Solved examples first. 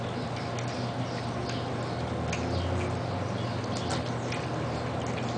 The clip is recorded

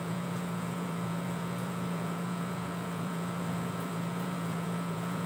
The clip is remade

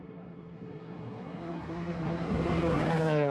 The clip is remade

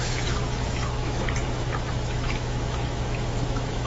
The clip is remade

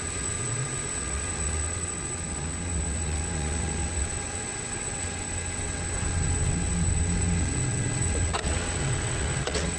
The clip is remade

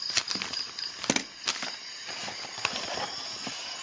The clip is recorded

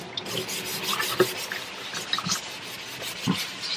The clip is recorded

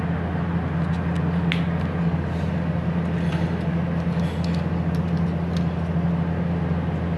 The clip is recorded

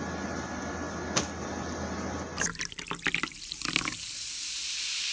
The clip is recorded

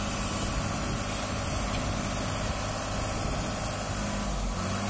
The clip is recorded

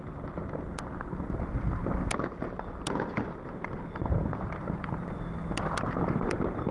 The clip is recorded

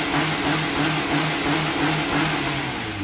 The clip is recorded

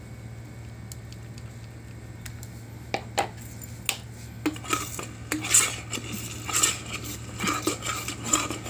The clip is recorded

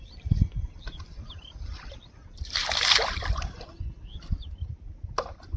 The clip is recorded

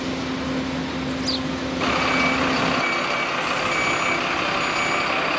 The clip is recorded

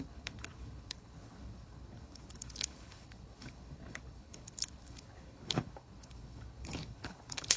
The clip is remade